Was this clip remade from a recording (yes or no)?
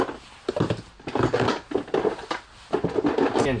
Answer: no